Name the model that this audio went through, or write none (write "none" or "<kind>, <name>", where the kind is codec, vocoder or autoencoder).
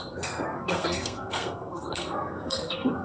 codec, SNAC